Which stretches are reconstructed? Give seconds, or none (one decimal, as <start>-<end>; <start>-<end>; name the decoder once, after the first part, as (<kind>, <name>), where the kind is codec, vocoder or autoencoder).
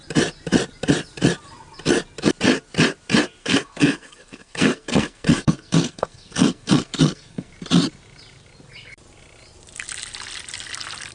3.4-7.5 (codec, SNAC)